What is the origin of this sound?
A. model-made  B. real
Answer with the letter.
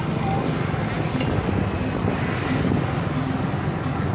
B